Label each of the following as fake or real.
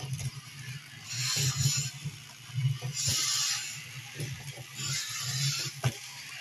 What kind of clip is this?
real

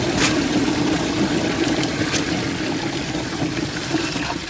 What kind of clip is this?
real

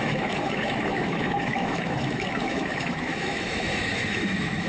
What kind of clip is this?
fake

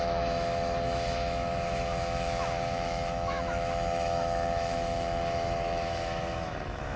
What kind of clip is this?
fake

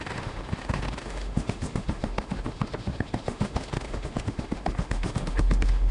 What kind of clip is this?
fake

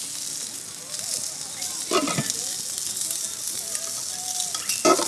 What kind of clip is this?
real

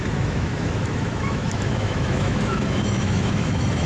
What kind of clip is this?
fake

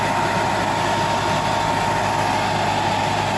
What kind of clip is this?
real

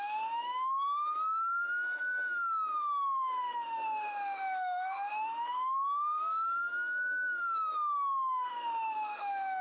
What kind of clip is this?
fake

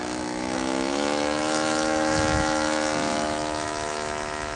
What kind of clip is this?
fake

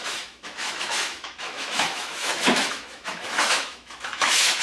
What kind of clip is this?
fake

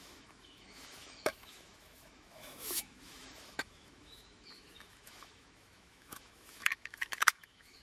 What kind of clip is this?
fake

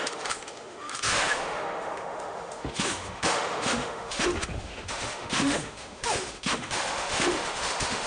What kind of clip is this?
fake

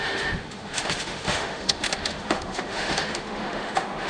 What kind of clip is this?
fake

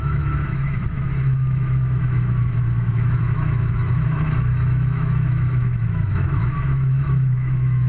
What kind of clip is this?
fake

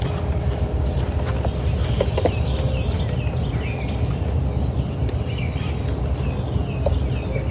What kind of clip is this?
real